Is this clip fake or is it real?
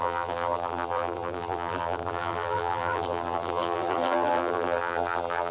fake